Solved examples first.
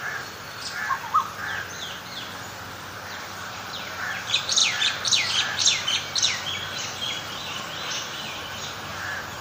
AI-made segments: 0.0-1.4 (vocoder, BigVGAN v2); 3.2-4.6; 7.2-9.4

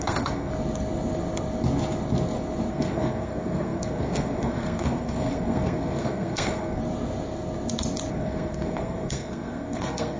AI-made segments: 0.0-0.5 (codec, SNAC); 2.7-6.8; 8.1-10.2